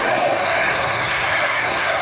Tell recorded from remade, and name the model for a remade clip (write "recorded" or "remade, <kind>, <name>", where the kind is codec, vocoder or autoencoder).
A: remade, codec, SNAC